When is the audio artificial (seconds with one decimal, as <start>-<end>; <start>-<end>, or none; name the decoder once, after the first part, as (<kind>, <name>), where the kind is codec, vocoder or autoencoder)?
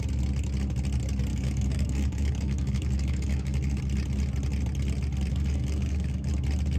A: 1.3-3.8 (codec, DAC); 5.3-6.3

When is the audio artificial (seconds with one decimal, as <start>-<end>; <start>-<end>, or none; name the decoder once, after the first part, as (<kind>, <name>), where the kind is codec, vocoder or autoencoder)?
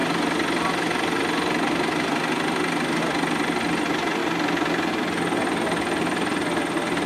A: none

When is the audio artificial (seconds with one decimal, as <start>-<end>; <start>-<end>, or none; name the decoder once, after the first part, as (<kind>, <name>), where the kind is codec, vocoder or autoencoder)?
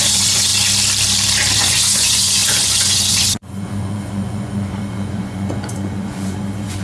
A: 0.0-0.5 (vocoder, Vocos); 1.6-6.8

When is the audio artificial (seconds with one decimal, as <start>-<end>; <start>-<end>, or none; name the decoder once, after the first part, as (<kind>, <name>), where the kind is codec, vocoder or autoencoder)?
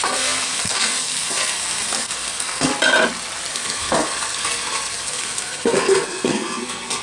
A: 0.0-2.7 (codec, SNAC); 3.5-7.0